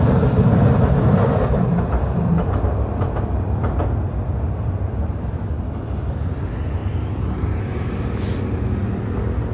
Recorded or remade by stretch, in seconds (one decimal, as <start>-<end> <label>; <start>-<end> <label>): 0.0-9.5 recorded